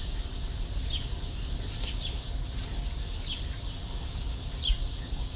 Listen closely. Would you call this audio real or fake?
real